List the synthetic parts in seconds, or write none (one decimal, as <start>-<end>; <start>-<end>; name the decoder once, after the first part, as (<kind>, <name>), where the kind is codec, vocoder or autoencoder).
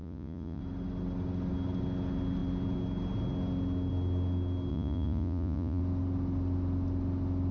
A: 0.0-0.6 (vocoder, Vocos); 4.7-5.8